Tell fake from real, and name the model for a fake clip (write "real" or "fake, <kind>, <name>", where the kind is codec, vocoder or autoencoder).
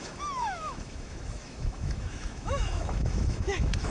fake, autoencoder, DAC-VAE